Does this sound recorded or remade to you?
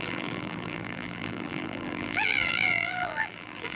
remade